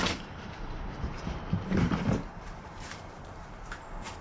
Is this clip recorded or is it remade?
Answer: remade